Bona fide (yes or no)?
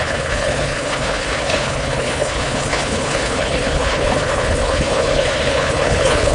no